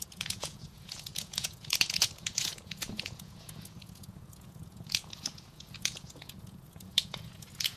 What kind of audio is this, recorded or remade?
remade